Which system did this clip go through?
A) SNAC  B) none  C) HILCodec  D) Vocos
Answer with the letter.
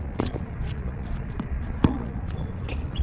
D